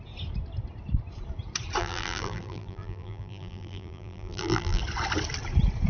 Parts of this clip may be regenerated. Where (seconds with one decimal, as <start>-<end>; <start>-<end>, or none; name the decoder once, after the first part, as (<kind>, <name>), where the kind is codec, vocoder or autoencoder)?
1.8-4.8 (vocoder, BigVGAN v2)